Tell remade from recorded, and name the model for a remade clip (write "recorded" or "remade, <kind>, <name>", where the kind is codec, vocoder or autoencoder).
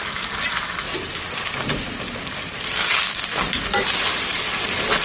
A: recorded